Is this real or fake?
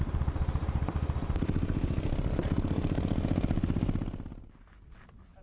real